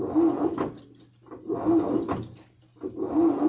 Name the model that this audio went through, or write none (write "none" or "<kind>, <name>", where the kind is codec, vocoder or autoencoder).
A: none